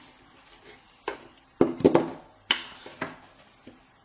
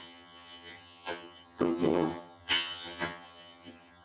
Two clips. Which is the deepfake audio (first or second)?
second